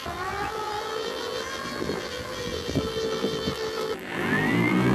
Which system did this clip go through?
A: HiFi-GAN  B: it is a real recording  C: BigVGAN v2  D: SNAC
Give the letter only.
C